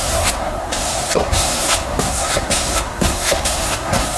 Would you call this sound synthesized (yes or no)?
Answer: yes